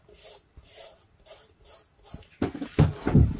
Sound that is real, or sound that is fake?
real